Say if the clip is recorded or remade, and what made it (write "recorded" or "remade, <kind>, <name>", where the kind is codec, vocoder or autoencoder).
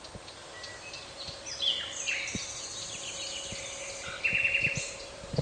recorded